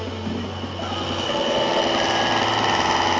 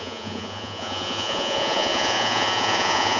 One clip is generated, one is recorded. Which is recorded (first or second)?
first